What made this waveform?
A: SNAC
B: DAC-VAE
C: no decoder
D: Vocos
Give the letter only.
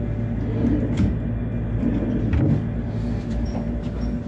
C